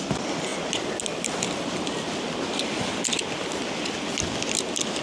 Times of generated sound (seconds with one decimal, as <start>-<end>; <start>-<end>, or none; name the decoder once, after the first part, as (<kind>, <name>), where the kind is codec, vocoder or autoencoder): none